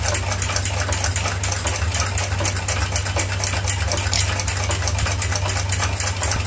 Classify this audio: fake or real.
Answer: real